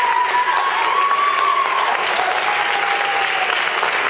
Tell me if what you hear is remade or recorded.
recorded